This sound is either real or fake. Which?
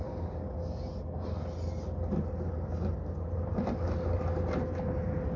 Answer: real